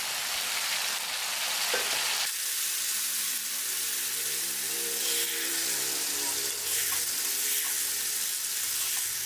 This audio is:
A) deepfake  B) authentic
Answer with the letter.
B